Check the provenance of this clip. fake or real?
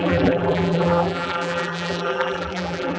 fake